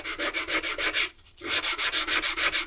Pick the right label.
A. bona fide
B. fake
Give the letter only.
A